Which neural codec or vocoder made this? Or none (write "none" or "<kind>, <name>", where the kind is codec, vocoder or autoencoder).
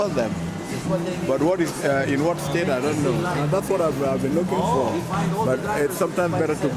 none